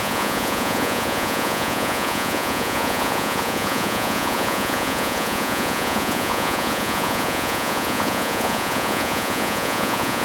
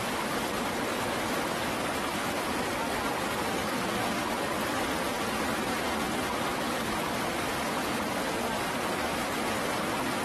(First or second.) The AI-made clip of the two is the first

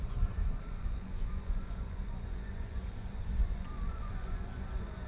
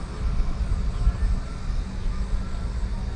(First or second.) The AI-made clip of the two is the first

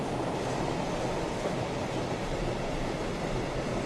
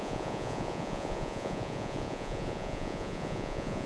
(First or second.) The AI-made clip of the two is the second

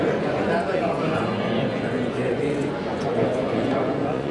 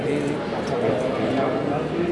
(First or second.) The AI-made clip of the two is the first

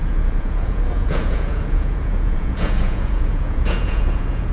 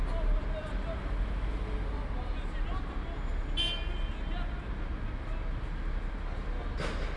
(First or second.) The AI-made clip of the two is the first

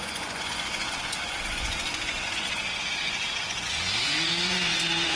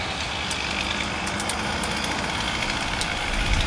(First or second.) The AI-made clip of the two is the first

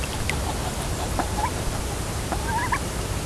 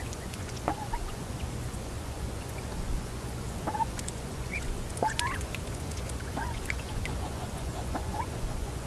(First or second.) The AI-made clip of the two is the second